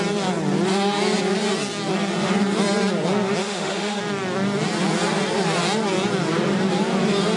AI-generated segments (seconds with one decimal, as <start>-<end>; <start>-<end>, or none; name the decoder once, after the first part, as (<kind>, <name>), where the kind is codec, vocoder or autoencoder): 3.4-4.0 (autoencoder, DAC-VAE)